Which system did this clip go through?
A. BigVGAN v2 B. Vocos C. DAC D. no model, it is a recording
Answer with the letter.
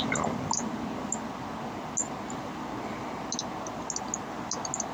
D